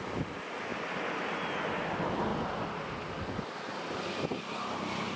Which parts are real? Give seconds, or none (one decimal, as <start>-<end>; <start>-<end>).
0.0-5.2